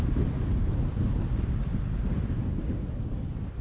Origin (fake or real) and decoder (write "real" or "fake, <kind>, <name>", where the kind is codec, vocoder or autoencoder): real